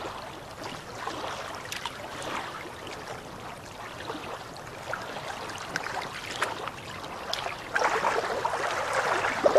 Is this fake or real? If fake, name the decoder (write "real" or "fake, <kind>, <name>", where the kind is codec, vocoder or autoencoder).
real